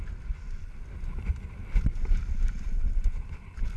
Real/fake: real